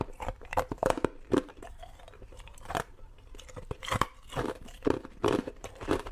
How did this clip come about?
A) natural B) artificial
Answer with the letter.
B